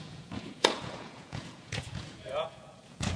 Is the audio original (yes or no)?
no